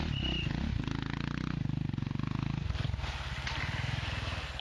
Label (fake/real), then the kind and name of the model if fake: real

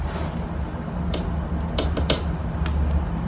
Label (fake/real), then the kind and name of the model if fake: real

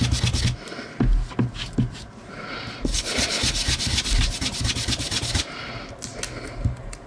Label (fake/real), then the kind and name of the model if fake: real